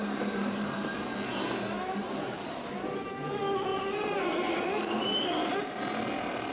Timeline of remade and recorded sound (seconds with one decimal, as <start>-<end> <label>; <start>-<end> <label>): 0.0-1.1 remade; 1.1-1.9 recorded; 1.9-6.5 remade